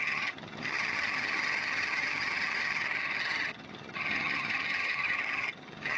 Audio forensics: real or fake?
fake